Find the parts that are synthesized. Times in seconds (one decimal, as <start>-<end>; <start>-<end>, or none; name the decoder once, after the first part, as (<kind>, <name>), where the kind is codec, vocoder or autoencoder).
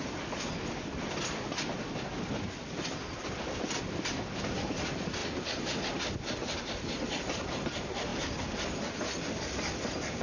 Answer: 3.0-4.3 (vocoder, BigVGAN v2)